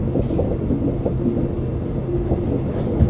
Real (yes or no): yes